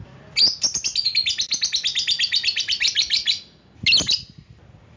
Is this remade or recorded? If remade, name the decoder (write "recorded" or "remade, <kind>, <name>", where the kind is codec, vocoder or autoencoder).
recorded